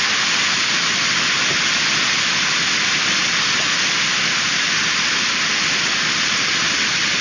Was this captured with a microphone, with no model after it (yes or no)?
yes